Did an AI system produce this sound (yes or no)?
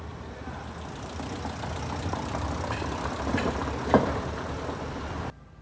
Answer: no